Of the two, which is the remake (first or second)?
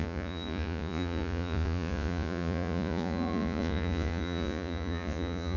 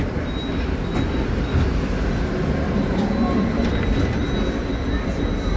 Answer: first